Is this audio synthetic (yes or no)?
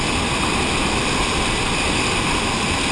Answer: no